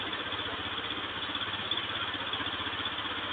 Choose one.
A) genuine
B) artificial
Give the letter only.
A